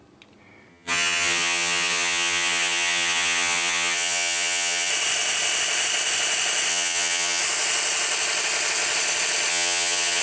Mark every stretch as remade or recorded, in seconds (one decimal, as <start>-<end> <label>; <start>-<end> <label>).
0.0-0.7 recorded; 0.7-4.9 remade; 4.9-6.7 recorded; 6.7-7.4 remade; 7.4-9.5 recorded; 9.5-10.2 remade